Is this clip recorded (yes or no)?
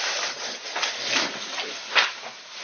yes